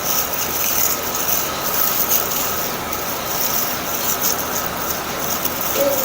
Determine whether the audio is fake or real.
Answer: real